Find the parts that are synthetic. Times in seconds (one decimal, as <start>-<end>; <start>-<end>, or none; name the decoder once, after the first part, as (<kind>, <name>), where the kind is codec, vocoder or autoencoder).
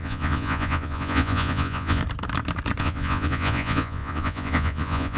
0.0-2.0 (vocoder, Vocos); 2.8-5.2